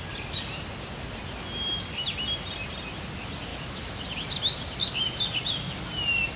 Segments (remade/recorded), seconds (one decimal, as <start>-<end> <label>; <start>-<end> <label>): 0.0-3.5 recorded; 3.5-4.0 remade; 4.0-6.4 recorded

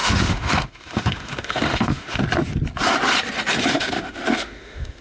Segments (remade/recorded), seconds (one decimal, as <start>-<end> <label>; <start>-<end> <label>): 0.0-2.2 remade; 2.2-3.7 recorded; 3.7-5.0 remade

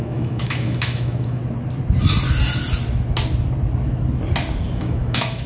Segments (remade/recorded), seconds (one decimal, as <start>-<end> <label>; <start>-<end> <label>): 0.0-1.4 remade; 1.4-4.7 recorded; 4.7-5.5 remade